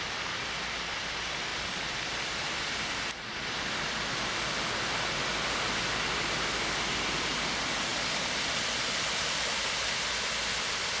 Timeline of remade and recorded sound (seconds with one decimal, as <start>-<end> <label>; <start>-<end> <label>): 0.0-11.0 recorded

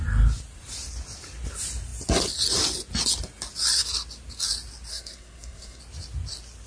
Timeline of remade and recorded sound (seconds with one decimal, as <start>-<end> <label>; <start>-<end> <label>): 0.0-4.9 recorded; 4.9-5.8 remade; 5.8-6.7 recorded

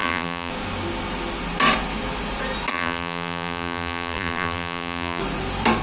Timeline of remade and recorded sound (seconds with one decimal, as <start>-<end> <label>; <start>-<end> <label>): 0.0-0.5 remade; 0.5-2.7 recorded; 2.7-5.2 remade; 5.2-5.8 recorded

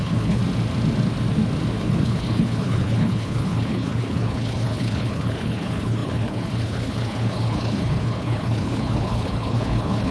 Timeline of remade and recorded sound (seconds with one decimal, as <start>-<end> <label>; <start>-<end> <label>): 0.0-0.4 remade; 0.4-1.8 recorded; 1.8-10.1 remade

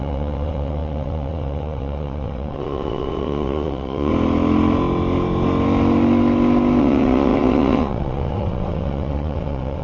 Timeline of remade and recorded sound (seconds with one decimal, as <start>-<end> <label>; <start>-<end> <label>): 0.0-4.1 remade; 4.1-6.8 recorded; 6.8-9.8 remade

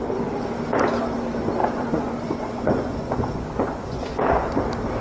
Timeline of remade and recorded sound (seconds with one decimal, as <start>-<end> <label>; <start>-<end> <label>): 0.0-1.6 recorded; 1.6-4.6 remade; 4.6-5.0 recorded

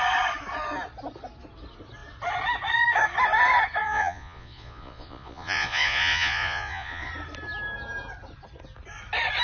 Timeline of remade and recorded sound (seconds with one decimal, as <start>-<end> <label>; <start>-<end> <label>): 0.0-3.8 recorded; 3.8-7.1 remade; 7.1-9.4 recorded

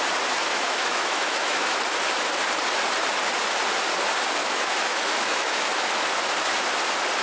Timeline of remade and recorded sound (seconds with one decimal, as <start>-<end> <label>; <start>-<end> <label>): 0.0-0.5 recorded; 0.5-1.8 remade; 1.8-4.4 recorded; 4.4-5.9 remade; 5.9-7.2 recorded